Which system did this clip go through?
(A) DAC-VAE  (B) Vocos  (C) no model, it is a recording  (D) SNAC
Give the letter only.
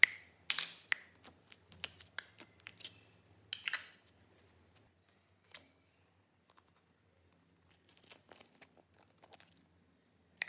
C